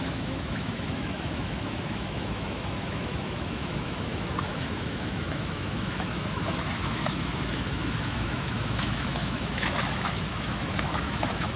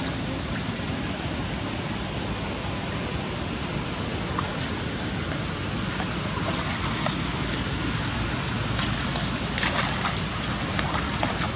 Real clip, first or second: second